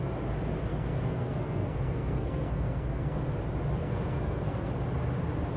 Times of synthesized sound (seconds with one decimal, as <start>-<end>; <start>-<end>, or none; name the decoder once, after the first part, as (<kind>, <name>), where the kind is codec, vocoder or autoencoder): 0.7-3.2 (codec, SNAC); 3.8-4.7